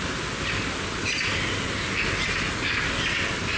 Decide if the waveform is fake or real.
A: real